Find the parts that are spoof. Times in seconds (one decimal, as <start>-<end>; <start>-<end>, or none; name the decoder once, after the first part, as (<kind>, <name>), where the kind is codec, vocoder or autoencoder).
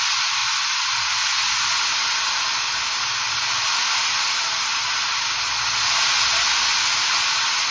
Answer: none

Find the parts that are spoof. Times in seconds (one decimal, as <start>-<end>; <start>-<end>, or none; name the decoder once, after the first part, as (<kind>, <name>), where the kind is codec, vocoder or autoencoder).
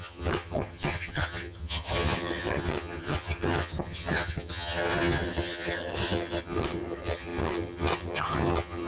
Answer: 0.0-8.9 (vocoder, HiFi-GAN)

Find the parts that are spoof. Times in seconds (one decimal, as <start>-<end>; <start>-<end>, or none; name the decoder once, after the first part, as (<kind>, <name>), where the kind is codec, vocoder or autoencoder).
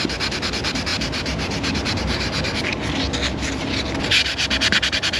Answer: none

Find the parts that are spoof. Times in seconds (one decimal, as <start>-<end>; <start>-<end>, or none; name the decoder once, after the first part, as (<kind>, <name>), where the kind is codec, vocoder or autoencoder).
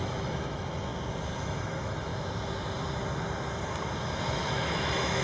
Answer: 0.0-0.9 (autoencoder, DAC-VAE); 1.4-2.1; 4.3-5.2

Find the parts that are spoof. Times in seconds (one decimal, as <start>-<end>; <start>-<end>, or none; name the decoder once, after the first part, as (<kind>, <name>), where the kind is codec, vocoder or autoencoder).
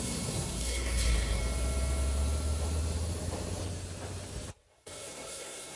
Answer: 0.0-1.4 (codec, SNAC); 4.7-5.8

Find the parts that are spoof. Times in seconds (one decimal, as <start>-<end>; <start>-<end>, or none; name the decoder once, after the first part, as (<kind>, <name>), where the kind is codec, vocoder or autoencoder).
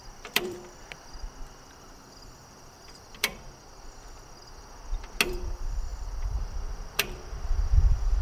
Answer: 0.0-0.8 (vocoder, BigVGAN v2); 1.4-3.3; 5.3-8.2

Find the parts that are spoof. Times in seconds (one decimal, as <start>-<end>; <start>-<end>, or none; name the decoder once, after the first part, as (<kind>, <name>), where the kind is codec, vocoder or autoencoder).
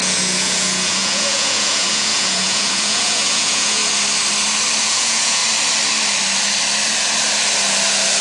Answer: 0.0-3.8 (vocoder, Vocos); 4.8-5.4